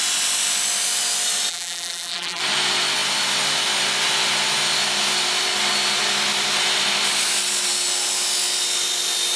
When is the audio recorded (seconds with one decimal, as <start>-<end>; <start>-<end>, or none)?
0.0-1.5; 2.4-9.4